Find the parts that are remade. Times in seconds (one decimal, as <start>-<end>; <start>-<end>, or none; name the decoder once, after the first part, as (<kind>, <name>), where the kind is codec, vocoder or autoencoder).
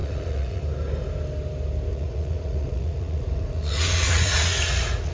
0.0-0.6 (vocoder, Vocos); 1.9-5.1